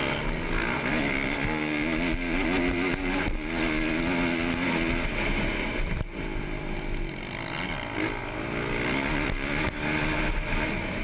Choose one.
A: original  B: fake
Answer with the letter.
A